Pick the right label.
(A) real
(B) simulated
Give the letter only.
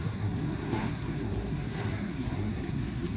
B